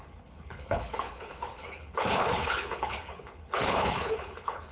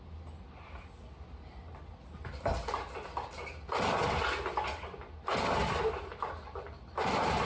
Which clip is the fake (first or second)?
first